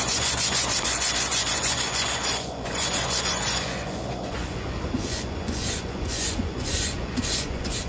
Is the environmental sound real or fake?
fake